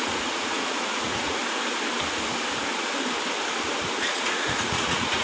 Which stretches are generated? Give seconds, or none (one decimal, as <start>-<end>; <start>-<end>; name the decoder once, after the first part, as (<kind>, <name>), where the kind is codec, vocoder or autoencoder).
0.0-1.4 (vocoder, Vocos); 4.0-5.2